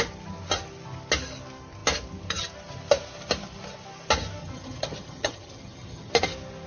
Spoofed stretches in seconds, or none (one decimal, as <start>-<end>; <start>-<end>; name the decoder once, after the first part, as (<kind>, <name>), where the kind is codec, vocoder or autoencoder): 4.4-6.1 (vocoder, HiFi-GAN)